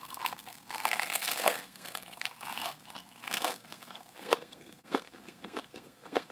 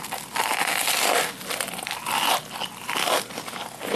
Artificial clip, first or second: first